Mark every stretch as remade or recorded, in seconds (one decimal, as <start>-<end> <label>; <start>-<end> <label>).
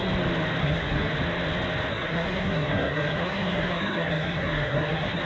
0.0-0.6 recorded; 0.6-1.1 remade; 1.1-1.9 recorded; 1.9-5.2 remade